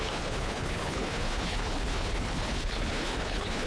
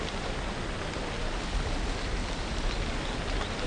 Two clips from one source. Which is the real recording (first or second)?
second